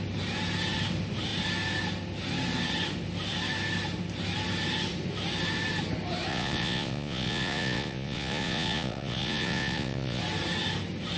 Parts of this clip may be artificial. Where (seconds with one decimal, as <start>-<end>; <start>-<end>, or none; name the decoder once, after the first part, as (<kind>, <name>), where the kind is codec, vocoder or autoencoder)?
6.3-10.2 (vocoder, Vocos)